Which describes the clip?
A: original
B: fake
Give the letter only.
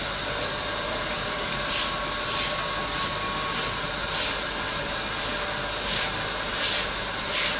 A